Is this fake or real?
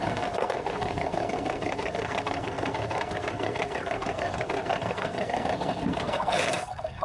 fake